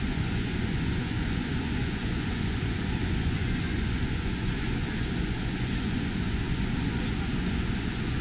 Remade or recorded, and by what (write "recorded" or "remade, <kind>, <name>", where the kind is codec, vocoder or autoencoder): remade, vocoder, Vocos